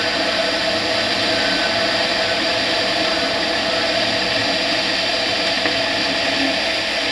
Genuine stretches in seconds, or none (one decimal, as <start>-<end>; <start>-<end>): 0.0-2.1; 3.7-5.1; 5.7-7.1